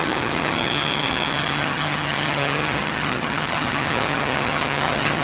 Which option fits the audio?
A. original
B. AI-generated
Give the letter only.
B